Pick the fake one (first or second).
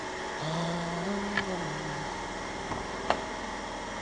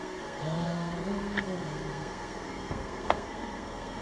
second